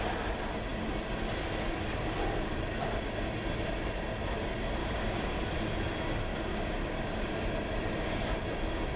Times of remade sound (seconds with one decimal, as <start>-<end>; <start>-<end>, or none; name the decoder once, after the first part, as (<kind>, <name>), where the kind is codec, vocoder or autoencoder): 4.8-5.4 (codec, DAC); 6.3-7.3